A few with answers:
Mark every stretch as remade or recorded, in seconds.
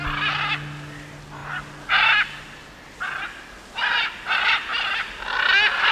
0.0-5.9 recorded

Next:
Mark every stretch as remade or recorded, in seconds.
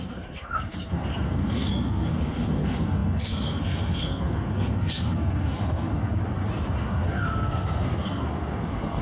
0.0-6.2 remade; 6.2-6.8 recorded; 6.8-9.0 remade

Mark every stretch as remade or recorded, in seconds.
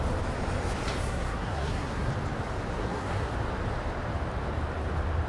0.0-1.0 recorded; 1.0-2.1 remade; 2.1-2.7 recorded; 2.7-3.3 remade; 3.3-5.3 recorded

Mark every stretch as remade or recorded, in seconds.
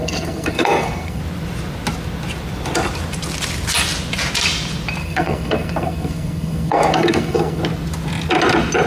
0.0-1.2 remade; 1.2-5.0 recorded; 5.0-7.6 remade; 7.6-8.9 recorded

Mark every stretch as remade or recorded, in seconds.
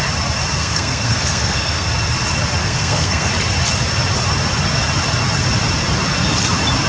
0.0-0.6 recorded; 0.6-1.9 remade; 1.9-2.6 recorded; 2.6-3.3 remade; 3.3-6.9 recorded